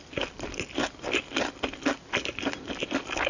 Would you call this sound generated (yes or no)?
no